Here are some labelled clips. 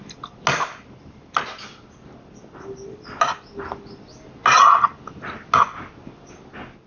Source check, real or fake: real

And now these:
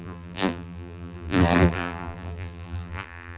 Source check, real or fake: fake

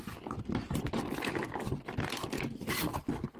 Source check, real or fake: real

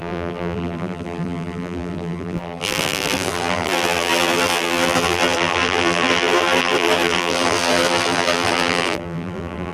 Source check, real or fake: fake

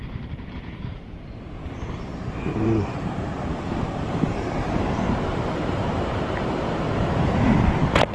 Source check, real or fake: fake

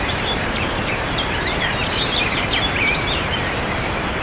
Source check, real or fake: fake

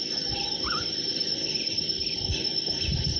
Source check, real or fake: fake